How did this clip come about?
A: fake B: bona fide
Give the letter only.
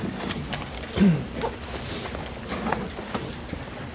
B